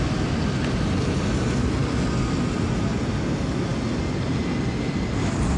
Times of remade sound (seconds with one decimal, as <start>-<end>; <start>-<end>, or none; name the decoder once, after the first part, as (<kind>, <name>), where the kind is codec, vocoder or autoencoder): none